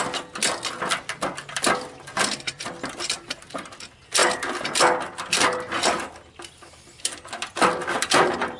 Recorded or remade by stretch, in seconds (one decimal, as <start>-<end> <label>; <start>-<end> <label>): 0.0-8.6 recorded